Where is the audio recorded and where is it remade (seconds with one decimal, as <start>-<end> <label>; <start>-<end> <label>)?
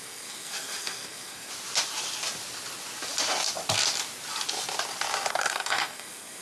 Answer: 0.0-1.5 remade; 1.5-5.3 recorded; 5.3-6.4 remade